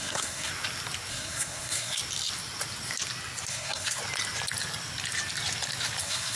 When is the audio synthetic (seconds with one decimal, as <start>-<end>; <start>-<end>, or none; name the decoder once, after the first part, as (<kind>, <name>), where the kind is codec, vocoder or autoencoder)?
0.0-0.5 (codec, SNAC); 1.1-2.0; 3.5-4.0; 6.0-6.4